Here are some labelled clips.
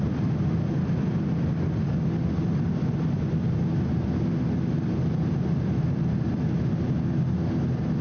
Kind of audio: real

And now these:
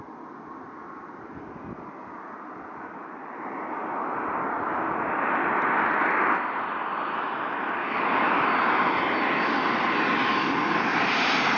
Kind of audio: real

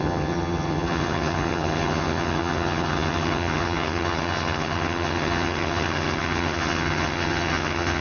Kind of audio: fake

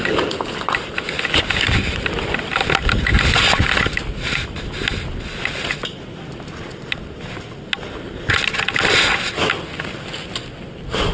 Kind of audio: real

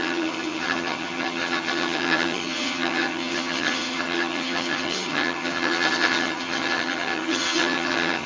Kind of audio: fake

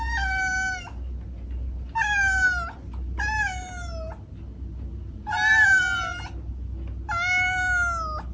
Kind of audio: real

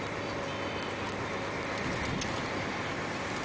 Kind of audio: real